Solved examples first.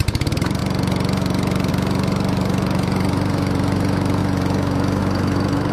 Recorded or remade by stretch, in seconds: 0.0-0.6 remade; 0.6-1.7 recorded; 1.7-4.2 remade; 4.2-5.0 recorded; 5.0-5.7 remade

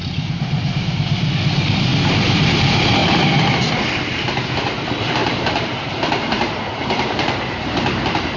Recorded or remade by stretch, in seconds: 0.0-3.0 remade; 3.0-3.8 recorded; 3.8-8.4 remade